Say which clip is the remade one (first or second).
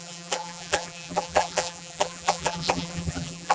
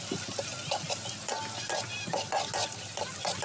first